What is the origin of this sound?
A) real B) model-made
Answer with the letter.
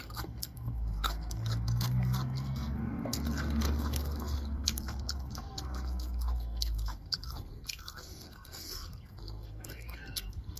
B